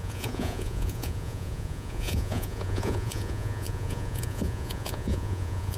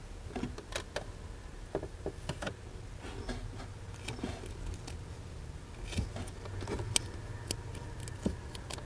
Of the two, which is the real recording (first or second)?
second